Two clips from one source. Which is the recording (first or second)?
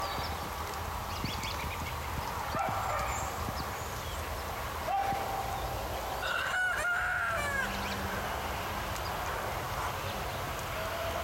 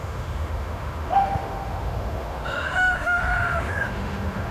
first